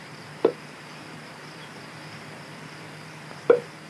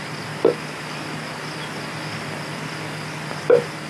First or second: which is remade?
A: first